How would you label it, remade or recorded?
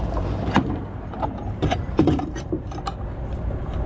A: remade